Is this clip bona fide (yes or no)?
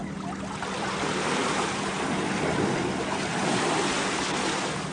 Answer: yes